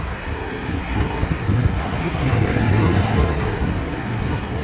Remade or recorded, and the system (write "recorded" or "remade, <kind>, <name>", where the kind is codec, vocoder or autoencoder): remade, codec, SNAC